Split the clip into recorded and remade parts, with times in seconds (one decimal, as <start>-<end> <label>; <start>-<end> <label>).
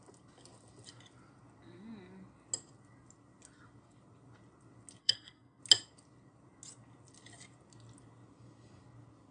0.0-5.0 recorded; 5.0-5.6 remade; 5.6-9.3 recorded